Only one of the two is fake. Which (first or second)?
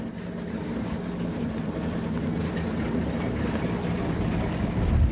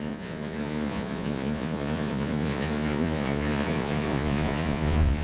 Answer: second